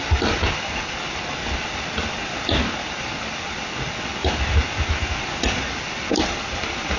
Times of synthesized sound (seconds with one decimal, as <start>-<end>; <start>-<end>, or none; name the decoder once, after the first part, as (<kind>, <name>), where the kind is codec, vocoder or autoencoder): none

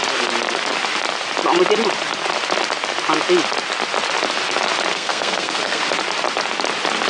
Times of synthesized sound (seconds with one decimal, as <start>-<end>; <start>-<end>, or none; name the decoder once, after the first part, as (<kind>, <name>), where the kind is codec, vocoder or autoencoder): 4.9-5.8 (codec, SNAC)

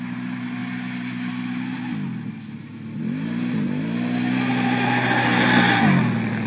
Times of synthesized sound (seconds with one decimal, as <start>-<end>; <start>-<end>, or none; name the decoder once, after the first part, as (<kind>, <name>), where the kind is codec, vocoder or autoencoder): none

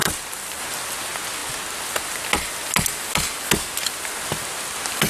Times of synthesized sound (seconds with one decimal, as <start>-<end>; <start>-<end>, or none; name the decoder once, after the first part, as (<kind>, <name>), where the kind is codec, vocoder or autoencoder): 0.0-0.6 (vocoder, BigVGAN v2)